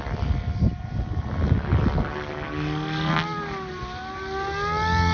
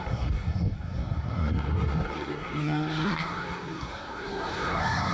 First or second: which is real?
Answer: first